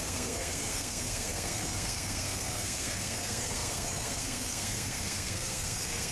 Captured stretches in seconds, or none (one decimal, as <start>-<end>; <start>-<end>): none